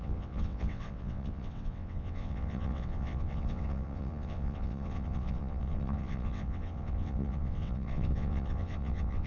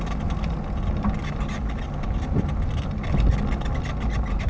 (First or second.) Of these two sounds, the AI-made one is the first